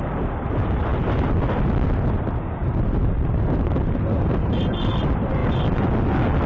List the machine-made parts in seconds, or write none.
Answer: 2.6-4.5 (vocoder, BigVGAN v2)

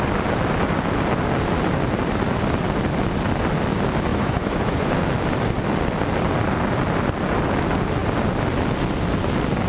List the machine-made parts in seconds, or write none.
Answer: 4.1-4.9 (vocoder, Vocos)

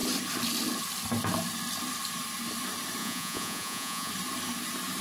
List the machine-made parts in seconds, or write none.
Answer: 3.0-4.1 (vocoder, Vocos)

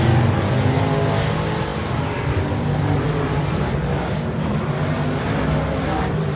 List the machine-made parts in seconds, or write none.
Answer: none

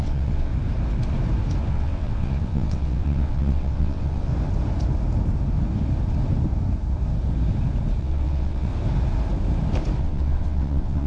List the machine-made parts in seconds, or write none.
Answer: 0.0-0.5 (vocoder, WaveNeXt); 1.7-4.3; 8.0-8.7; 10.0-11.1

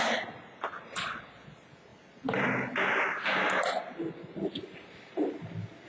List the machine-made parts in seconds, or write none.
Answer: none